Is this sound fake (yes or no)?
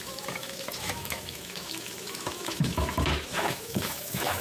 yes